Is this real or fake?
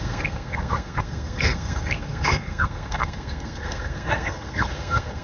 fake